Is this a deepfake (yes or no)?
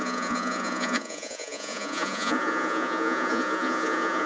yes